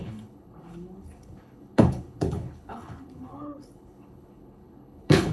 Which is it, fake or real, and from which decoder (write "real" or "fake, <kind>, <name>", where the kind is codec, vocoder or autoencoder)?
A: fake, codec, HILCodec